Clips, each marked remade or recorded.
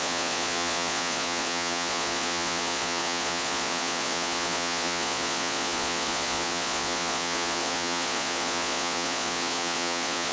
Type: remade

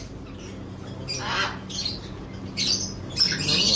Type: recorded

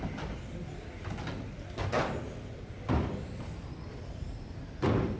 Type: recorded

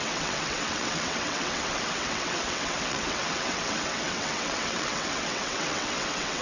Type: remade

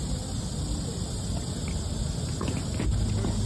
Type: recorded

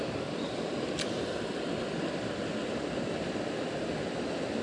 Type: recorded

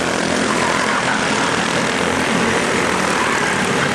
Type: recorded